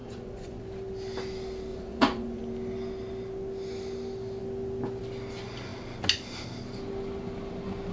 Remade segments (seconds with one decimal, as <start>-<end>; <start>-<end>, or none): 0.0-0.6; 1.7-2.4